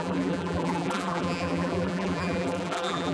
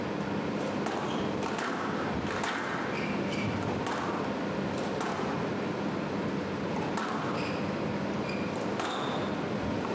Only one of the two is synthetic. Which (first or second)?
first